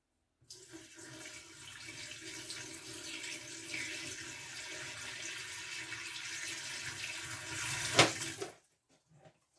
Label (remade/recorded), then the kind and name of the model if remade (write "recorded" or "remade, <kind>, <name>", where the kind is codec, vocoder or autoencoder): recorded